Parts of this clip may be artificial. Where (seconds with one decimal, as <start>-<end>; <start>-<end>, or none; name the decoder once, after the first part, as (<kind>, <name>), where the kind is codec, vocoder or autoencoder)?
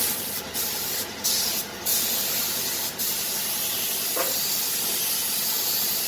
none